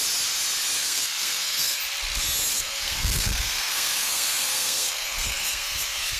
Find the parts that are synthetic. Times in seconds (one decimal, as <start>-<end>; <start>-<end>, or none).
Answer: 0.8-1.8; 2.5-6.2